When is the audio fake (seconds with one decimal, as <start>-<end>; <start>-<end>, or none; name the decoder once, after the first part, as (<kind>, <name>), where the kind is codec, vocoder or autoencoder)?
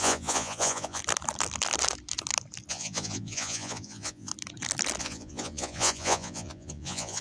0.0-1.0 (vocoder, Vocos); 2.7-4.3; 5.0-7.2